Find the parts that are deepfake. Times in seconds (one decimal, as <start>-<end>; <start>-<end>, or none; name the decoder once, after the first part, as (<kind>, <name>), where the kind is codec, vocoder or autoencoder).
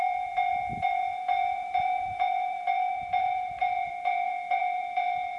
0.0-5.4 (vocoder, BigVGAN v2)